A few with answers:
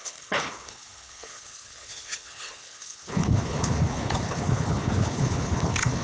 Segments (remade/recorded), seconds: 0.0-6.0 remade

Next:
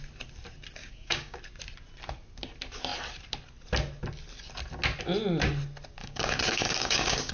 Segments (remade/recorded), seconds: 0.0-0.8 recorded; 0.8-1.4 remade; 1.4-6.0 recorded; 6.0-7.3 remade